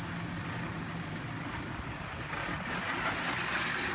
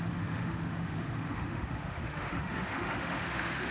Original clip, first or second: first